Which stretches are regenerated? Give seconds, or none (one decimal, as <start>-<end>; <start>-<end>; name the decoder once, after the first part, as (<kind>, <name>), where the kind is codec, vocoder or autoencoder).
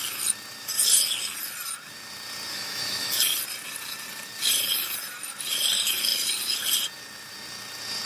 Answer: 2.5-3.2 (autoencoder, DAC-VAE)